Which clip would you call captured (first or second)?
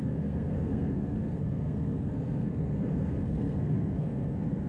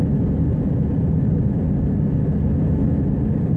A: second